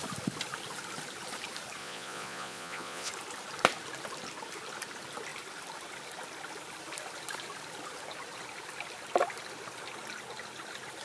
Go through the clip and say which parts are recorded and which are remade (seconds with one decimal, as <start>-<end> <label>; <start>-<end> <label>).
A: 0.0-1.8 recorded; 1.8-3.1 remade; 3.1-11.0 recorded